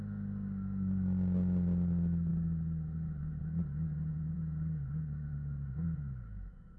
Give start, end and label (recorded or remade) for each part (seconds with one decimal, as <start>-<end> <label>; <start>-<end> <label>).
0.0-4.1 recorded; 4.1-6.8 remade